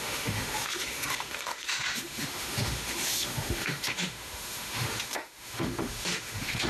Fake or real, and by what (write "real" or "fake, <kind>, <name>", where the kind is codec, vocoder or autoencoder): fake, autoencoder, DAC-VAE